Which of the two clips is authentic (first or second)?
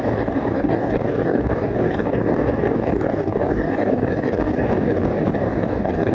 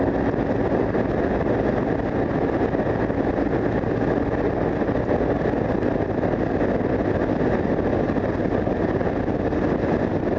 second